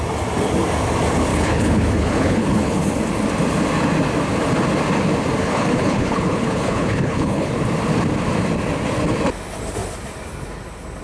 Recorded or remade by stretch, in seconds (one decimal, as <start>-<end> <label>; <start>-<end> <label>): 0.0-1.3 recorded; 1.3-2.8 remade; 2.8-5.4 recorded; 5.4-7.5 remade; 7.5-11.0 recorded